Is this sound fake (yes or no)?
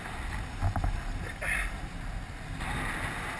no